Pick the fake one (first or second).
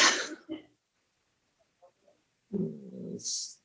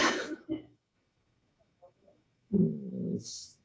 second